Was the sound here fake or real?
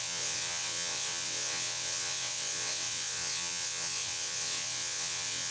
fake